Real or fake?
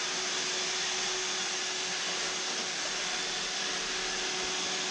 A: real